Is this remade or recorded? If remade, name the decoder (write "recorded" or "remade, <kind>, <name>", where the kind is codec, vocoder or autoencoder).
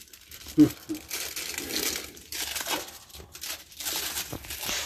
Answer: recorded